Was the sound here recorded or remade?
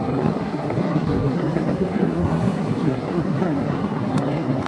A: remade